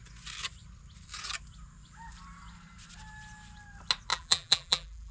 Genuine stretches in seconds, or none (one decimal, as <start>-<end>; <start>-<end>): 0.0-4.1